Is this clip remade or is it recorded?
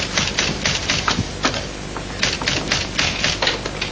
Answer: recorded